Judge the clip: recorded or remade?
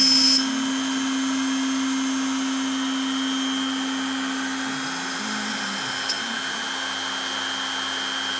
recorded